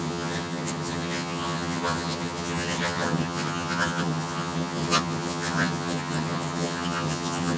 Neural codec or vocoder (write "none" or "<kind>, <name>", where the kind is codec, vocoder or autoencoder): vocoder, HiFi-GAN